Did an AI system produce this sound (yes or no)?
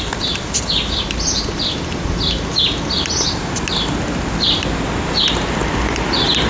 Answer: no